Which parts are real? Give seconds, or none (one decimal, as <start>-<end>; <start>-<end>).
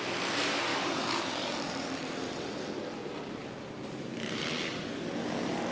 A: 0.0-0.7; 2.4-3.0; 4.4-5.7